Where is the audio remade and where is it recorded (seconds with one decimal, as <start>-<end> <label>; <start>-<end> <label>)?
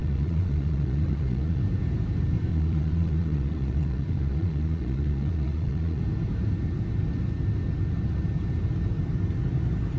0.0-1.6 remade; 1.6-2.5 recorded; 2.5-6.0 remade; 6.0-10.0 recorded